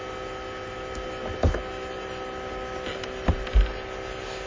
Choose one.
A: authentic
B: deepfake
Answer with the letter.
A